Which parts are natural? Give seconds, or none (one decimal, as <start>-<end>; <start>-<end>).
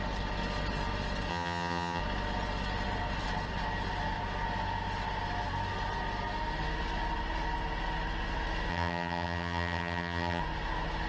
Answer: 0.0-1.3; 2.0-8.7; 10.4-11.1